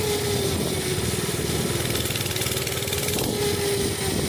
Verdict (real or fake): real